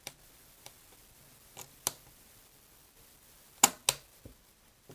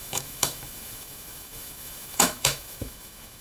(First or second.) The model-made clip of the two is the second